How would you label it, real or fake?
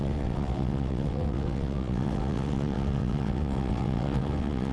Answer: fake